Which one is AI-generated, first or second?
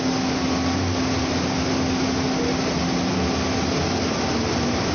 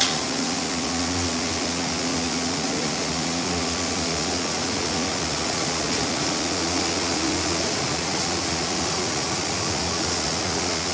second